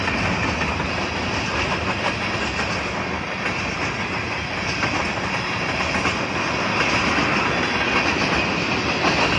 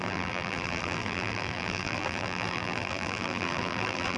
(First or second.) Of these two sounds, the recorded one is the first